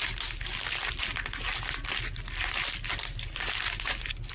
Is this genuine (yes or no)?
yes